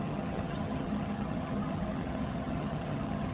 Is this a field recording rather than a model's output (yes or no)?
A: no